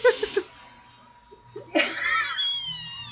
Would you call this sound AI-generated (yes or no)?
no